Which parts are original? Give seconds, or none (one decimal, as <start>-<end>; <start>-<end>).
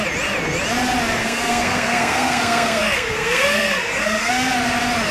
0.0-1.2; 4.3-5.1